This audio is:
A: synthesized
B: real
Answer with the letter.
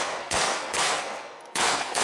A